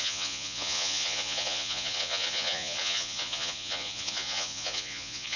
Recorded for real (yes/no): no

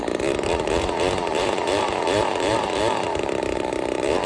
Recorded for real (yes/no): no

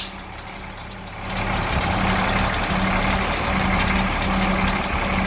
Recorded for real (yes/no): yes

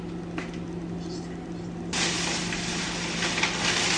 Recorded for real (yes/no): yes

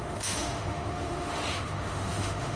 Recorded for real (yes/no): no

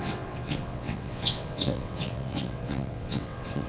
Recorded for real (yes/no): no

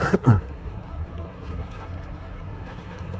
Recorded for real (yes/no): no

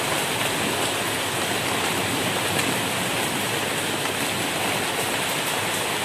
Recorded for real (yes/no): yes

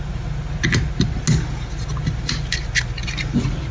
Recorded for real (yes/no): yes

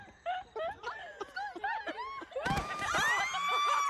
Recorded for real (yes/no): yes